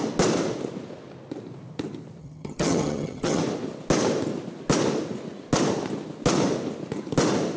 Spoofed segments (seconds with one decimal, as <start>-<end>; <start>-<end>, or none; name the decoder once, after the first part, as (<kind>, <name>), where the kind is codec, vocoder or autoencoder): 2.2-3.4 (vocoder, HiFi-GAN)